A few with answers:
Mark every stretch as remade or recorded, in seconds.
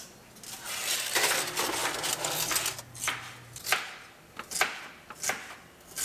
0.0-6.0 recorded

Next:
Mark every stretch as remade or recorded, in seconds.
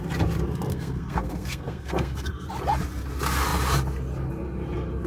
0.0-0.7 recorded; 0.7-2.3 remade; 2.3-5.1 recorded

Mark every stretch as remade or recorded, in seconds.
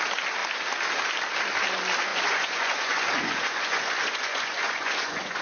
0.0-2.1 recorded; 2.1-5.4 remade